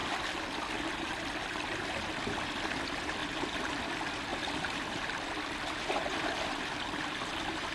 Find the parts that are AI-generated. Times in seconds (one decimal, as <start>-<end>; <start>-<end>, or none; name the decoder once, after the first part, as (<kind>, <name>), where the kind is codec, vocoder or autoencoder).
4.3-6.2 (vocoder, BigVGAN v2)